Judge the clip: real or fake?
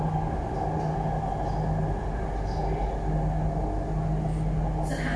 real